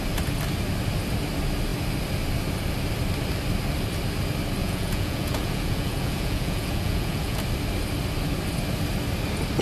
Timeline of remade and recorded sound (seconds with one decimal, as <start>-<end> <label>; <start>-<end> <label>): 0.0-4.6 recorded; 4.6-7.4 remade; 7.4-9.6 recorded